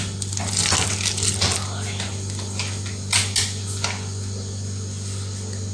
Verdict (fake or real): real